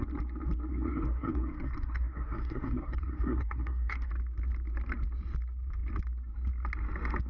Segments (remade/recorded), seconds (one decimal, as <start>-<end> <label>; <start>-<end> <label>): 0.0-0.7 recorded; 0.7-4.1 remade; 4.1-7.3 recorded